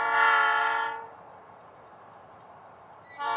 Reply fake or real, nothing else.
fake